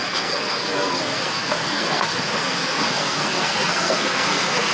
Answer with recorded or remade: remade